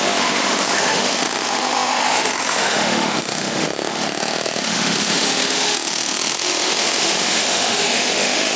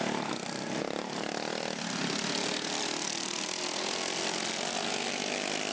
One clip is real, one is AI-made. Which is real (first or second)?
second